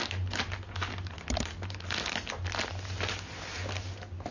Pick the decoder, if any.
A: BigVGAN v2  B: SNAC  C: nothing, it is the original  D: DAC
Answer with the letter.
C